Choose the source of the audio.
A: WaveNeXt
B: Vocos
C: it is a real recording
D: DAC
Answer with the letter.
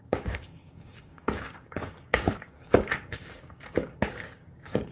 D